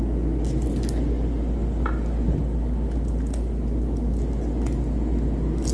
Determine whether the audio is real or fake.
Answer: real